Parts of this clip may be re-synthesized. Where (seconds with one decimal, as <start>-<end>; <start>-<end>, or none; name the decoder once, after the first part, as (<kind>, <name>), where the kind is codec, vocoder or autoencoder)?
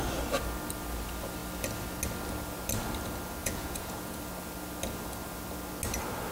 3.4-4.2 (vocoder, Vocos)